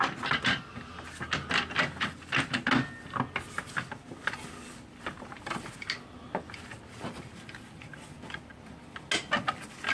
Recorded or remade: recorded